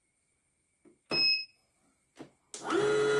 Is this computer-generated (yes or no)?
no